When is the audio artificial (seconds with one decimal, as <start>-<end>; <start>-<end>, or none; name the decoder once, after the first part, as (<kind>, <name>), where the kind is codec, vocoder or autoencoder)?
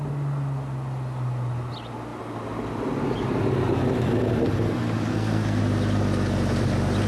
5.1-5.6 (codec, SNAC)